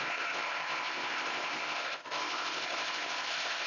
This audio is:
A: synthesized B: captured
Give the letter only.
A